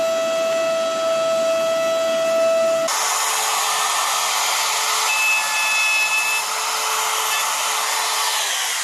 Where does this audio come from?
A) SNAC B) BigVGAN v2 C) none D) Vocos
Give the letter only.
C